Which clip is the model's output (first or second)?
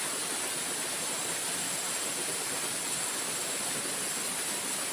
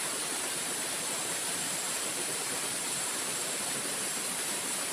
second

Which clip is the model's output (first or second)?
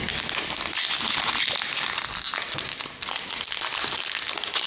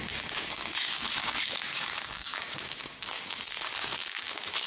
second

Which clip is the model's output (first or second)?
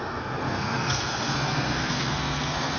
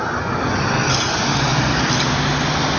first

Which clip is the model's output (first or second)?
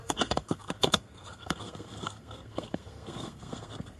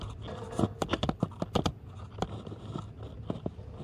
first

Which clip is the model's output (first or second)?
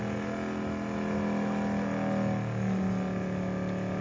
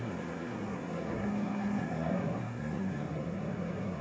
second